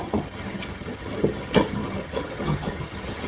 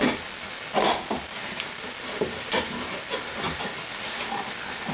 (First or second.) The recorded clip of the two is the second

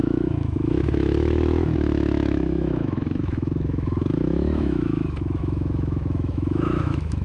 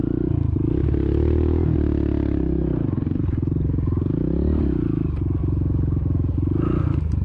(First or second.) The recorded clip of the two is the second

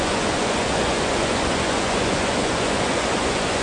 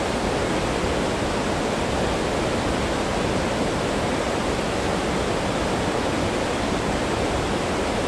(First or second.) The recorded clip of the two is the second